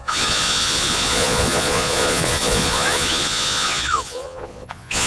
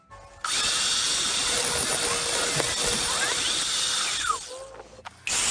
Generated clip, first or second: first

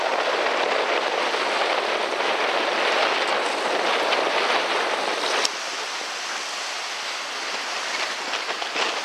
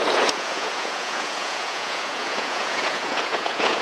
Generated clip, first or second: second